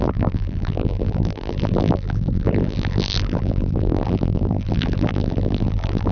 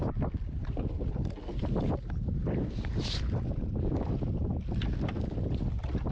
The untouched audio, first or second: second